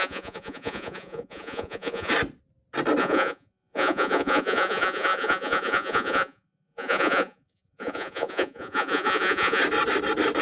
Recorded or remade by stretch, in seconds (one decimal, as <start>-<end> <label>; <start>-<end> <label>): 0.0-2.1 remade; 2.1-3.0 recorded; 3.0-9.6 remade; 9.6-10.4 recorded